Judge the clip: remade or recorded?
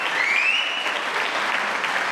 recorded